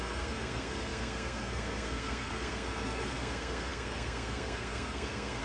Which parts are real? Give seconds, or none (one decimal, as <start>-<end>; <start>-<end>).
none